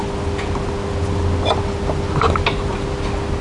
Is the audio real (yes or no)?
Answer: yes